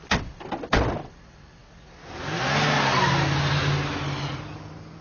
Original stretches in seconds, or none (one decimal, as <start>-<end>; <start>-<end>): 0.0-5.0

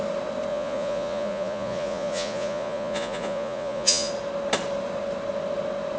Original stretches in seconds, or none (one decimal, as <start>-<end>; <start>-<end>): 0.0-0.5; 4.1-6.0

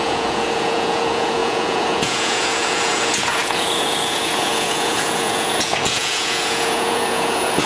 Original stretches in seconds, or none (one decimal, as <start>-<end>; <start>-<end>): none

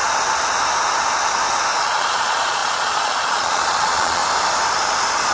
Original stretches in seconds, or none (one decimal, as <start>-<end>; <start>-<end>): 0.0-1.8; 4.2-5.3

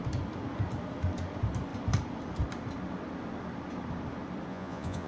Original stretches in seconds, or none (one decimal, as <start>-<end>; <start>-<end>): 0.0-4.5

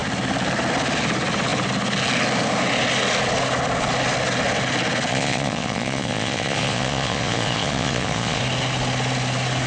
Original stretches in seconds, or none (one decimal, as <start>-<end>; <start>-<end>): 0.0-5.1; 8.4-9.7